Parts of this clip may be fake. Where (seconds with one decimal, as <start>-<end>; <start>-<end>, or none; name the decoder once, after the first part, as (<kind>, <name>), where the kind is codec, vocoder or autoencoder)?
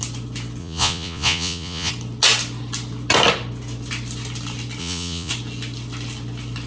0.6-1.9 (vocoder, Vocos); 4.8-5.3